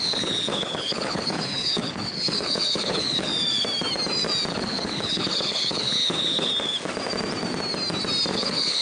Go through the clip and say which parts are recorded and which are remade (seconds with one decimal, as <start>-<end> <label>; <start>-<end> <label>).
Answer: 0.0-3.3 remade; 3.3-4.5 recorded; 4.5-6.5 remade; 6.5-8.3 recorded; 8.3-8.8 remade